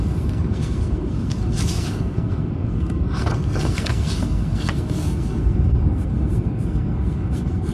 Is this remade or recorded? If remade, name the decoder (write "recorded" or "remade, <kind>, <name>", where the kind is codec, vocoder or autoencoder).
remade, codec, SNAC